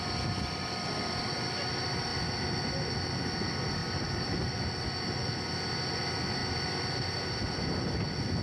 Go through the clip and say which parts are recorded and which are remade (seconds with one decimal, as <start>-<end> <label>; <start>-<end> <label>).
0.0-3.8 recorded; 3.8-4.6 remade; 4.6-6.4 recorded; 6.4-7.4 remade; 7.4-8.4 recorded